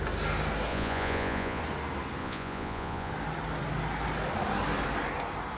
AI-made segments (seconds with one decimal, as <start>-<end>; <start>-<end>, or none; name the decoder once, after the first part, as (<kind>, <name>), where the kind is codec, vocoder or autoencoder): 0.7-1.6 (vocoder, Vocos); 2.2-3.1